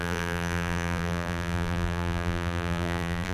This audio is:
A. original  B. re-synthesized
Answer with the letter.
B